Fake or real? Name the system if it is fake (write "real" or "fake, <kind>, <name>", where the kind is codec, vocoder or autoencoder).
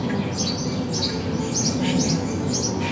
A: real